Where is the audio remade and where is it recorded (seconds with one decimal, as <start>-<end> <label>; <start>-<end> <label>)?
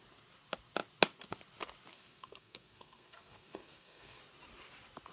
0.0-1.9 recorded; 1.9-4.2 remade; 4.2-5.1 recorded